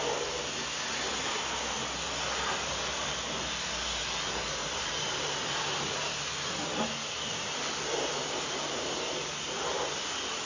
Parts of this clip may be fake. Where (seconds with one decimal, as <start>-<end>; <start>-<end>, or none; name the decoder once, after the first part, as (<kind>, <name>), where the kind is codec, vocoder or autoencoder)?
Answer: none

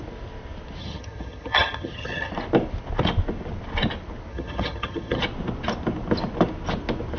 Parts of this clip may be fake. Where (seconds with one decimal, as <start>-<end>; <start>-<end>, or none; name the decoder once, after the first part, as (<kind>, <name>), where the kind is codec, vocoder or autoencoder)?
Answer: 0.8-2.3 (vocoder, HiFi-GAN); 4.3-5.2